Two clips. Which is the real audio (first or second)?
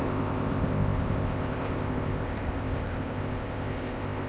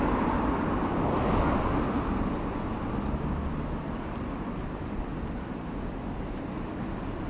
second